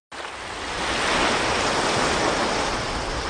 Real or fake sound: real